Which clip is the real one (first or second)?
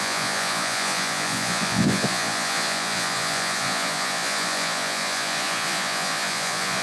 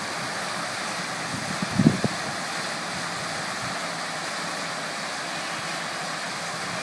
second